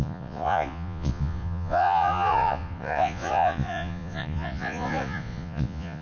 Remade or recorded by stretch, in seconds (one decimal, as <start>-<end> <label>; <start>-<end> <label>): 0.0-6.0 remade